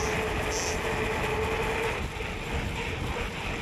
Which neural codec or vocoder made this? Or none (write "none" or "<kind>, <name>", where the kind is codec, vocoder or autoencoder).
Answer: none